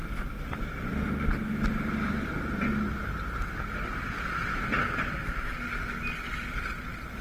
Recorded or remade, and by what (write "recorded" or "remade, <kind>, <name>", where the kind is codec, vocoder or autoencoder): recorded